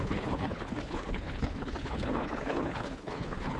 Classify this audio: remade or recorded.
remade